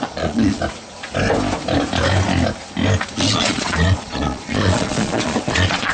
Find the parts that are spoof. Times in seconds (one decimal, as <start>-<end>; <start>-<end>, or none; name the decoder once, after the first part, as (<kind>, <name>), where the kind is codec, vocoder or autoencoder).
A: 0.0-0.6 (vocoder, Vocos); 3.1-5.9